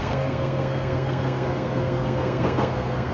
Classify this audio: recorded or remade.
remade